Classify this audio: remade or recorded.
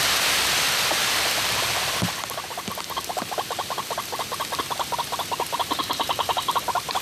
remade